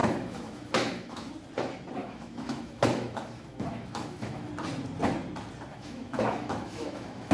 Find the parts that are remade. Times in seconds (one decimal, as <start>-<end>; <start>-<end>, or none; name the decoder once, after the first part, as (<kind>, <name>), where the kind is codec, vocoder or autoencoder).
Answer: 0.0-1.3 (autoencoder, DAC-VAE); 2.0-4.5; 5.7-7.3